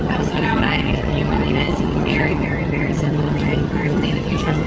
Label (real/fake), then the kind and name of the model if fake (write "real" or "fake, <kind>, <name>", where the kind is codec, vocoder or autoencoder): fake, vocoder, HiFi-GAN